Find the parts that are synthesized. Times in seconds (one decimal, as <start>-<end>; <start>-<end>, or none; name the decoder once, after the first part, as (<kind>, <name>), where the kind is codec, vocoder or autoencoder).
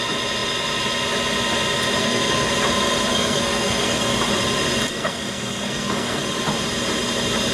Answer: 2.0-2.5 (codec, SNAC); 3.1-4.1; 4.9-6.2